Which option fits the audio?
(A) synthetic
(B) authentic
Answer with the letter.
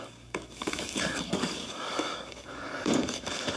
A